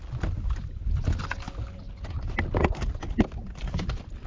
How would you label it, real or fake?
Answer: real